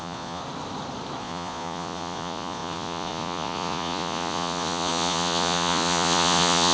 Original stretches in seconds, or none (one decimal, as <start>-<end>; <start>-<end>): 0.4-1.2